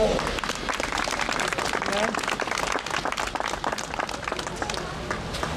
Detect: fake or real real